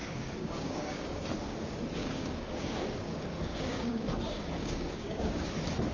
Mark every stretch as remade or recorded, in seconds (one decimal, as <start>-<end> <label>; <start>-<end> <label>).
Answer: 0.0-1.2 remade; 1.2-2.0 recorded; 2.0-5.5 remade; 5.5-5.9 recorded

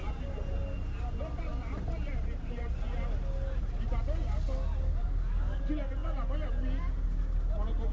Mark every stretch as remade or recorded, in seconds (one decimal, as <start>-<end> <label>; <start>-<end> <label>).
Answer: 0.0-5.0 recorded; 5.0-5.6 remade; 5.6-7.9 recorded

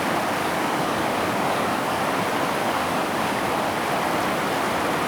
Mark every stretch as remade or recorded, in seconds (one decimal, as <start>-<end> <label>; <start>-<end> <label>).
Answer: 0.0-0.4 recorded; 0.4-2.0 remade; 2.0-2.6 recorded; 2.6-3.4 remade; 3.4-5.1 recorded

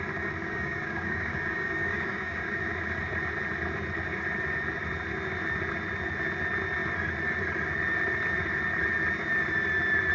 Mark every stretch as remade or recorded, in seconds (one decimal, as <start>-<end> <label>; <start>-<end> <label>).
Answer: 0.0-0.4 recorded; 0.4-2.6 remade; 2.6-10.1 recorded

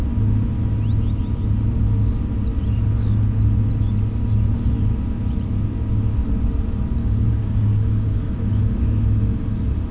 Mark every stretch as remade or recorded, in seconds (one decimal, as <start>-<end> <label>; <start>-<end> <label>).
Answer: 0.0-7.0 recorded; 7.0-8.2 remade; 8.2-9.9 recorded